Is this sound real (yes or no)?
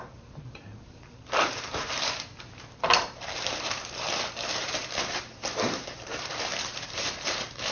no